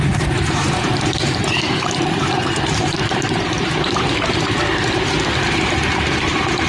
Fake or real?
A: fake